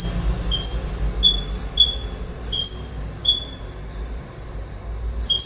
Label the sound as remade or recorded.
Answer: recorded